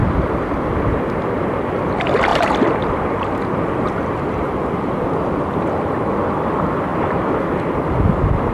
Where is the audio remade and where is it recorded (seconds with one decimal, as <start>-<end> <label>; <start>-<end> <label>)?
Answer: 0.0-2.3 recorded; 2.3-6.2 remade; 6.2-6.9 recorded; 6.9-8.0 remade; 8.0-8.5 recorded